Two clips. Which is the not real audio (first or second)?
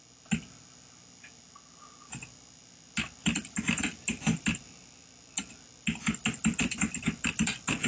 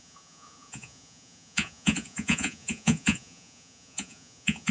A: second